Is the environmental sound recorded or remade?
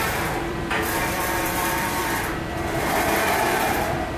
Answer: remade